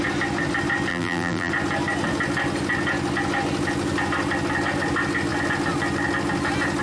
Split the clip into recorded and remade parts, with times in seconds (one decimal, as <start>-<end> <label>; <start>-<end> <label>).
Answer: 0.0-0.9 recorded; 0.9-1.5 remade; 1.5-6.8 recorded